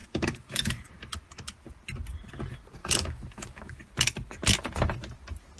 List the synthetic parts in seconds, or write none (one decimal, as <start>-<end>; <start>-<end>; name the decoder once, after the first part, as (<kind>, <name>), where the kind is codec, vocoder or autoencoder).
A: 0.0-0.9 (autoencoder, DAC-VAE); 2.8-3.8